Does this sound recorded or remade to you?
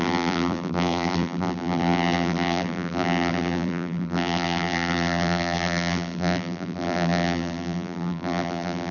remade